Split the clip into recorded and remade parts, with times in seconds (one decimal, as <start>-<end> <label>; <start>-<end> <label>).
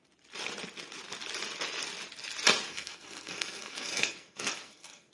0.0-2.7 recorded; 2.7-5.1 remade